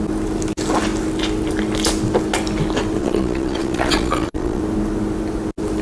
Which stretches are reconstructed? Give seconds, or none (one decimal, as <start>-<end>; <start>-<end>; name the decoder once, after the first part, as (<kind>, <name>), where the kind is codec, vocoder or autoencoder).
3.0-4.6 (vocoder, Vocos)